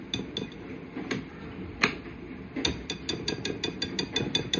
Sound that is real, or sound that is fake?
real